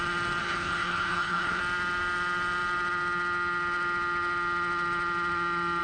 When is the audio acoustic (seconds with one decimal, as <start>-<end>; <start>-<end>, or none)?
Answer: 0.0-0.4; 1.6-5.8